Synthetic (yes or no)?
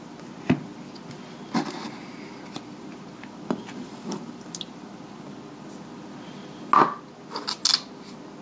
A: no